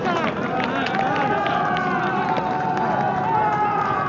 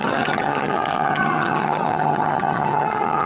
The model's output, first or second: second